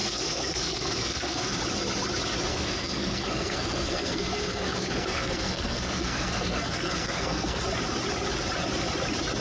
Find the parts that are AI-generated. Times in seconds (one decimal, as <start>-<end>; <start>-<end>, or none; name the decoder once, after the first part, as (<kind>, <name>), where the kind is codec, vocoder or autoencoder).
0.0-1.6 (codec, SNAC); 2.5-7.6